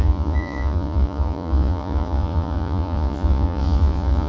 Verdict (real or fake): fake